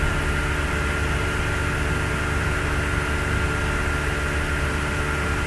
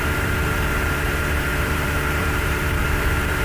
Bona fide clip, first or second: first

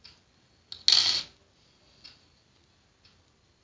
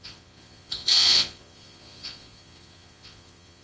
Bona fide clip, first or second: first